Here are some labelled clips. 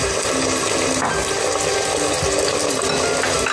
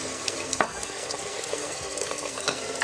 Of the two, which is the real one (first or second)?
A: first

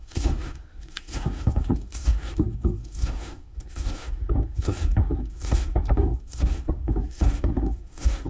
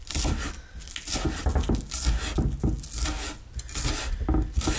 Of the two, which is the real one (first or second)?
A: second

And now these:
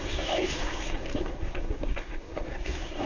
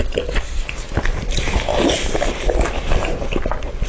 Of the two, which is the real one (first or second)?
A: second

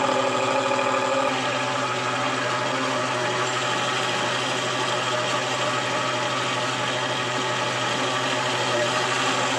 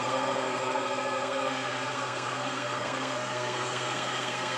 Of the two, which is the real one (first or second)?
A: first